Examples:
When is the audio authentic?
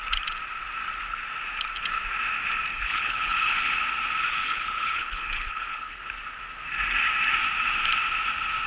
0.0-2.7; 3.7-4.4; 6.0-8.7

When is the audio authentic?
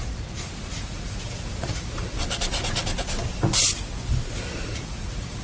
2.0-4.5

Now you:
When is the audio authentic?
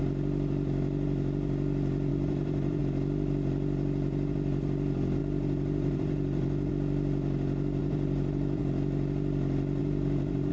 0.0-2.1; 2.8-5.2; 6.7-7.8; 8.6-9.8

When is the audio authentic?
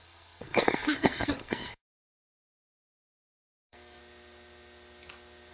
4.0-5.5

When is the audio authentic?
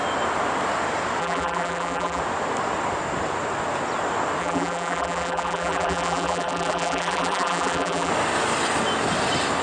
0.0-1.2; 2.2-4.4; 8.1-9.6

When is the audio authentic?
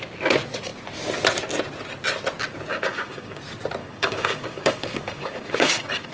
0.0-2.7; 3.4-3.8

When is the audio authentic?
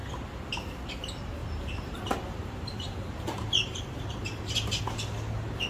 0.0-1.4; 4.8-5.7